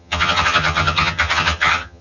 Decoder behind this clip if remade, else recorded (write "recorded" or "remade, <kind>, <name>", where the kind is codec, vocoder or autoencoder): remade, vocoder, HiFi-GAN